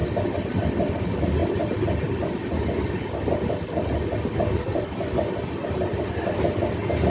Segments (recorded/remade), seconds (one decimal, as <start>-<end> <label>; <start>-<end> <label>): 0.0-7.1 recorded